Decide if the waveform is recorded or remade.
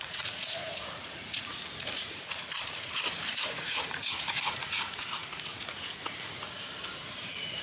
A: remade